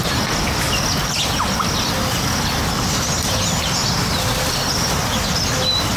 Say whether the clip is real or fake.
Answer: real